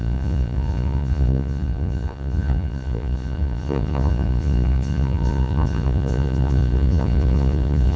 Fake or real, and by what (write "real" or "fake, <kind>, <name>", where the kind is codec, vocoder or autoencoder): fake, vocoder, Vocos